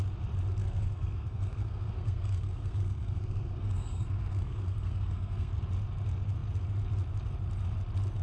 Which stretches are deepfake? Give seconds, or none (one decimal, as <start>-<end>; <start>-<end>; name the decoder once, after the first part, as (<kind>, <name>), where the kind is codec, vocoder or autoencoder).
0.6-5.5 (codec, SNAC)